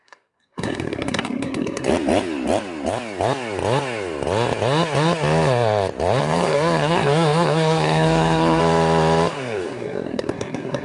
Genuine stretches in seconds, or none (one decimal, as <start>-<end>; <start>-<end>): 1.9-6.2; 8.6-9.3